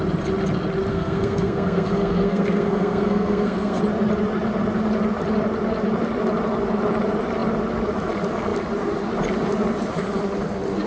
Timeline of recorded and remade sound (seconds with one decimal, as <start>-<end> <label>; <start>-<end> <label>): 0.0-0.9 recorded; 0.9-3.8 remade; 3.8-10.9 recorded